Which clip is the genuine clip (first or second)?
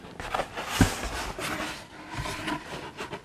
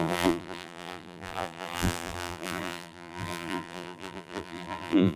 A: first